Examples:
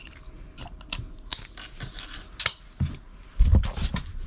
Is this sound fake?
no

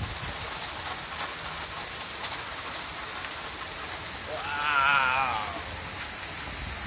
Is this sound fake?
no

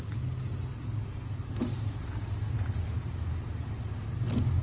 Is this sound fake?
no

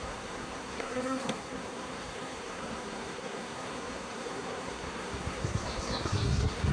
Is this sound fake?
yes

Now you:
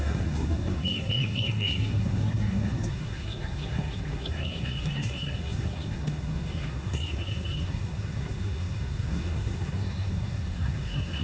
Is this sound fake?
yes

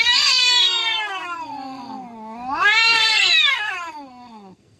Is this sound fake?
yes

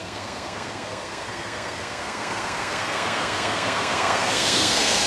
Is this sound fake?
yes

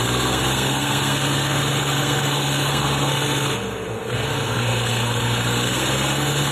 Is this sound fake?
yes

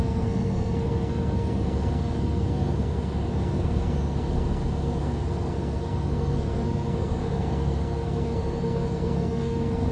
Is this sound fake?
yes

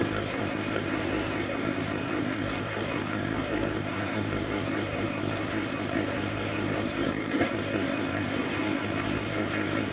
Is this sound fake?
yes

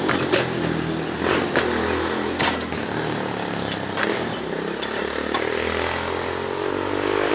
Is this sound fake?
no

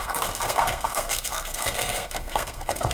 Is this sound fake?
yes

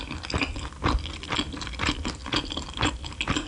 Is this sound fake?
no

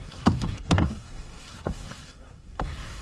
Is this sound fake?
yes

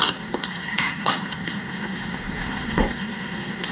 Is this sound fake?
yes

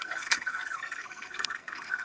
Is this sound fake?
yes